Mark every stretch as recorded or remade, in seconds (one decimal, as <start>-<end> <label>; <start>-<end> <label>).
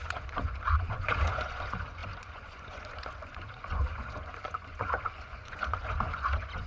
0.0-6.7 remade